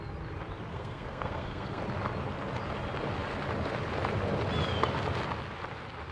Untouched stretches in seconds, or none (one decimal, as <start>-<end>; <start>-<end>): 0.0-0.7; 1.8-6.1